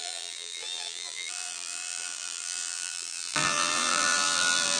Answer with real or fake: fake